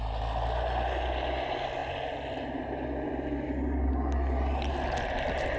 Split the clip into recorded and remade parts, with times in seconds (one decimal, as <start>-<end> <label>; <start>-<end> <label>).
0.0-5.6 recorded